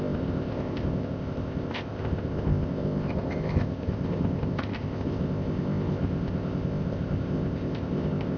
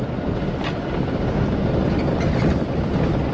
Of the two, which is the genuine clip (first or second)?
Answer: second